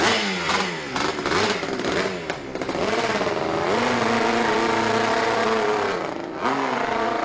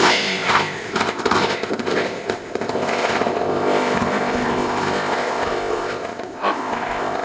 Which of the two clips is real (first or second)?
first